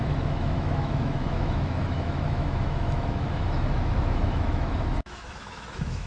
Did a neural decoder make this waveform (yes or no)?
yes